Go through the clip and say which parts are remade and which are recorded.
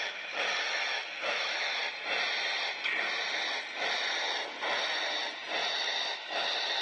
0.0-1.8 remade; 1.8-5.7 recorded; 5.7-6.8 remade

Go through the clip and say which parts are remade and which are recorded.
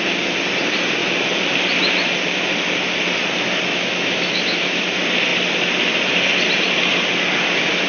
0.0-3.7 recorded; 3.7-4.8 remade; 4.8-7.9 recorded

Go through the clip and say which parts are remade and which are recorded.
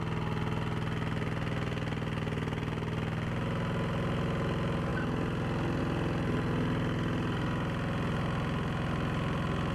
0.0-9.7 recorded